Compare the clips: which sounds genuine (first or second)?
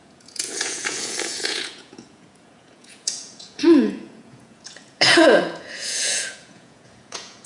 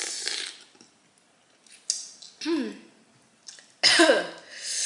second